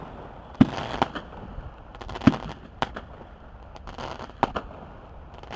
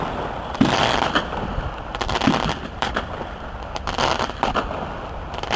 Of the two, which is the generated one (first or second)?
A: second